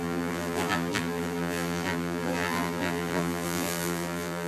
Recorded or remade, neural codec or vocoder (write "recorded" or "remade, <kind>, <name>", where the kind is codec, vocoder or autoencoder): remade, vocoder, BigVGAN v2